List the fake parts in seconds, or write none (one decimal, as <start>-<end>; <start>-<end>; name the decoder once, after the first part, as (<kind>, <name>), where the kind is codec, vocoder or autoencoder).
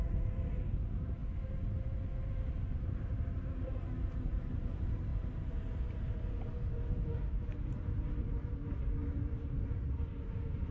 0.0-1.2 (vocoder, BigVGAN v2); 2.8-10.7